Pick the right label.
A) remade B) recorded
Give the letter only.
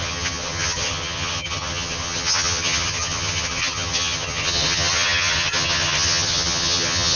A